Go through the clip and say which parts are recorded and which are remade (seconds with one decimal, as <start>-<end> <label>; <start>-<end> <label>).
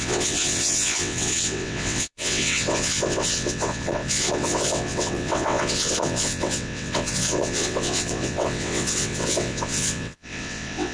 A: 0.0-10.9 remade